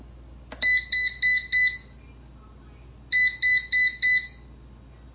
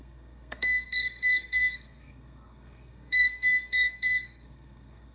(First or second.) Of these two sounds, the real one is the first